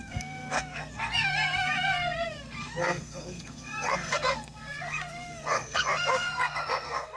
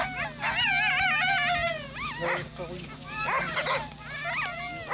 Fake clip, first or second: first